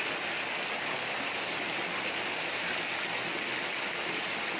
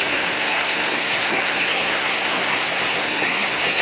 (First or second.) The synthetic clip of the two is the second